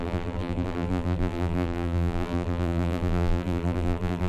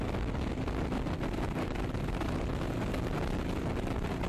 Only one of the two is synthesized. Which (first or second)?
first